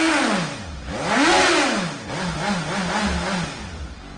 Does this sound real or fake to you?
real